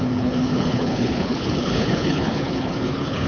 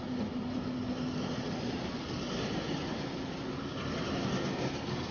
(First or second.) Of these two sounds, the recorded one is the second